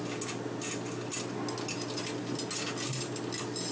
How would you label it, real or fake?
real